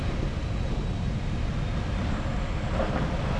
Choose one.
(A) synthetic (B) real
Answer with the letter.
B